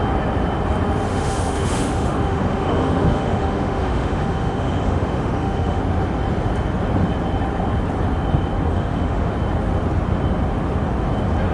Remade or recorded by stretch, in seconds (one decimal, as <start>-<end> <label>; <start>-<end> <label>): 0.0-1.1 recorded; 1.1-5.8 remade; 5.8-8.7 recorded; 8.7-9.3 remade; 9.3-11.5 recorded

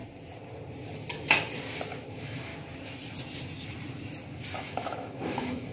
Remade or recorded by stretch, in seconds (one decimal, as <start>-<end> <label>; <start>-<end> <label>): 0.0-2.1 recorded; 2.1-2.5 remade; 2.5-4.6 recorded; 4.6-5.7 remade